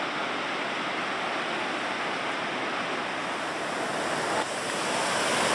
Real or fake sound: real